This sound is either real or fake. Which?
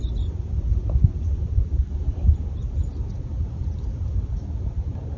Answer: real